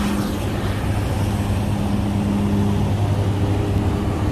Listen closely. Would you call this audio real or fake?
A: real